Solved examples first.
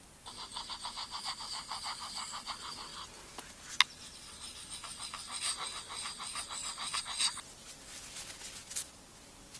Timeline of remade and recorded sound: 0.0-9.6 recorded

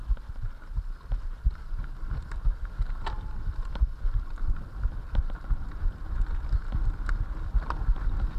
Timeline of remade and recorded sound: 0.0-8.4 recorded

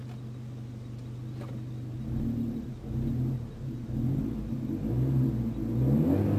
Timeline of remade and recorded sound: 0.0-6.4 recorded

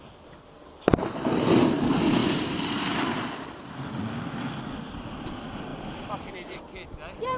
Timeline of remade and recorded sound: 0.0-2.2 recorded; 2.2-2.9 remade; 2.9-5.7 recorded; 5.7-7.4 remade

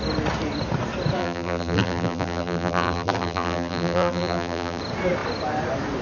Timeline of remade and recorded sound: 0.0-1.2 recorded; 1.2-4.8 remade; 4.8-6.0 recorded